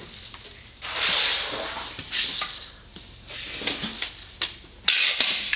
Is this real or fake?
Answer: real